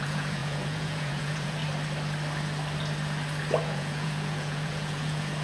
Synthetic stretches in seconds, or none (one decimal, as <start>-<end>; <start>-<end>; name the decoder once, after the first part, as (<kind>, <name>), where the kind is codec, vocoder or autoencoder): 0.0-1.6 (vocoder, Vocos); 3.6-5.4